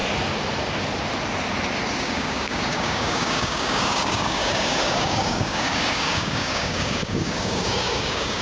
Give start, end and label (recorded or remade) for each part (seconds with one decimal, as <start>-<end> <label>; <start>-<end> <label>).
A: 0.0-2.0 recorded; 2.0-8.4 remade